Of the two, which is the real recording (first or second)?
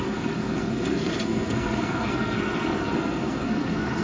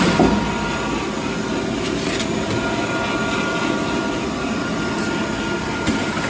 second